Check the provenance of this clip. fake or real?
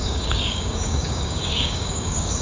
fake